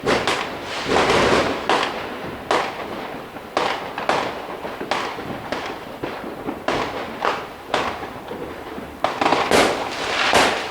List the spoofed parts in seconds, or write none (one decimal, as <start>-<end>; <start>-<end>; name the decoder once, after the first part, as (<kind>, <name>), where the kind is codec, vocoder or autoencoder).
9.3-10.7 (vocoder, BigVGAN v2)